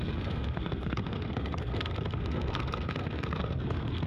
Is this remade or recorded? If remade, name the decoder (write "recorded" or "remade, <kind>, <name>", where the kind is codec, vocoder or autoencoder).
remade, codec, SNAC